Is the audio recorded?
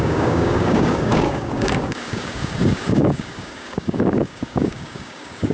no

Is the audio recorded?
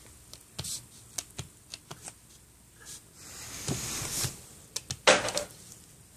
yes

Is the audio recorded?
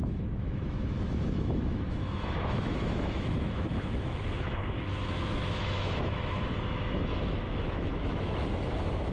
no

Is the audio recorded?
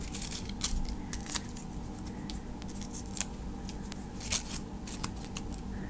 yes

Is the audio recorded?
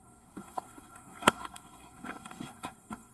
no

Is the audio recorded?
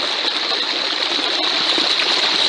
yes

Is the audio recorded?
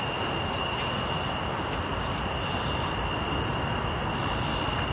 yes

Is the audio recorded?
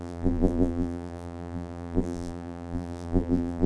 no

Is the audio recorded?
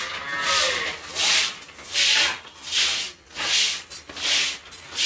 yes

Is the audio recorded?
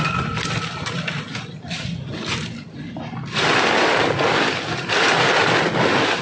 yes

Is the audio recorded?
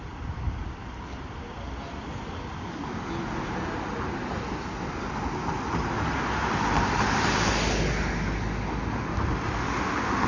yes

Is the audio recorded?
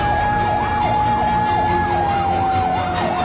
yes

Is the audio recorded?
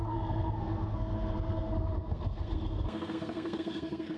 no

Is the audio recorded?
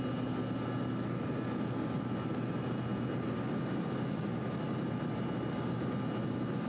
yes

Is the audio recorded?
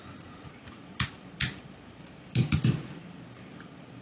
yes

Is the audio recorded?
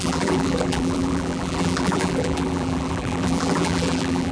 no